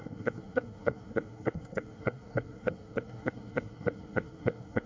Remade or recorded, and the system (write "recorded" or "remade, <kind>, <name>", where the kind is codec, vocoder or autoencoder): remade, codec, SNAC